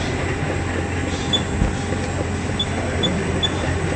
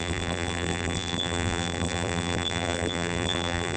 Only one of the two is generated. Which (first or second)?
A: second